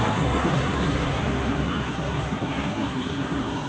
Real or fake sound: fake